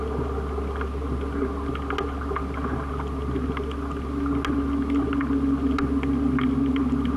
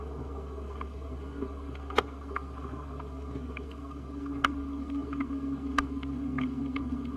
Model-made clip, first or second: second